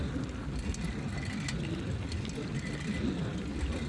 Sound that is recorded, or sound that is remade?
recorded